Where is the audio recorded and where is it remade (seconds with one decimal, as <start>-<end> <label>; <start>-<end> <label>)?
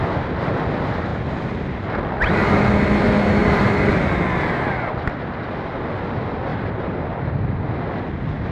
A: 0.0-1.1 recorded; 1.1-2.0 remade; 2.0-3.4 recorded; 3.4-4.7 remade; 4.7-6.5 recorded; 6.5-7.5 remade; 7.5-8.5 recorded